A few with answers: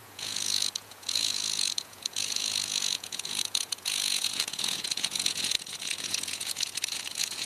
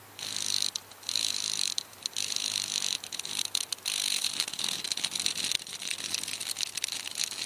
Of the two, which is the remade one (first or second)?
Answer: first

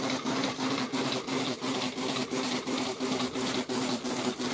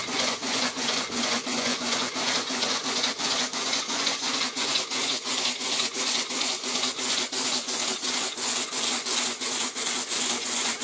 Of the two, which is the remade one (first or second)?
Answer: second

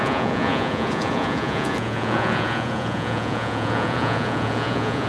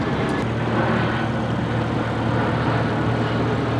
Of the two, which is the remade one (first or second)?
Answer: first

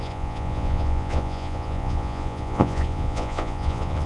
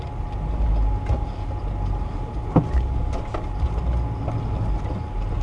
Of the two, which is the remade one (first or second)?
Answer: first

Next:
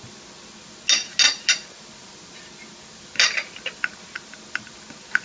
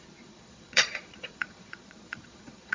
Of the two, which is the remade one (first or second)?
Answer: second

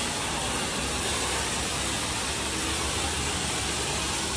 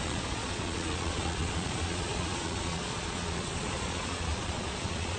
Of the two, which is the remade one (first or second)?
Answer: second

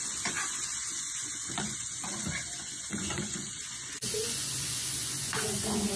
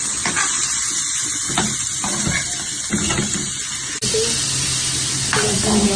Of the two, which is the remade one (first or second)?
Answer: first